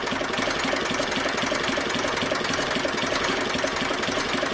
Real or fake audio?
real